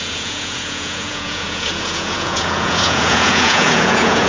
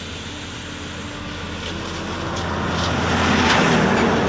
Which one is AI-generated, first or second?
first